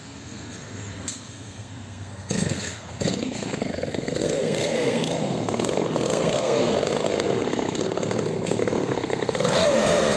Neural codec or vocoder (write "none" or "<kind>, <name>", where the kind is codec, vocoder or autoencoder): codec, SNAC